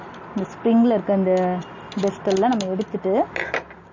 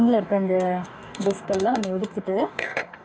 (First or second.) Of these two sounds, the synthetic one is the second